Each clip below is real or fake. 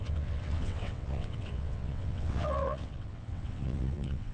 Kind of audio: fake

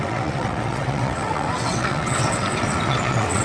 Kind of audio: fake